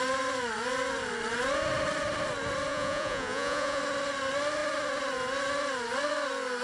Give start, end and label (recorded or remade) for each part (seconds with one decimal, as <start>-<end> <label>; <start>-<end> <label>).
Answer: 0.0-2.7 recorded; 2.7-3.8 remade; 3.8-6.6 recorded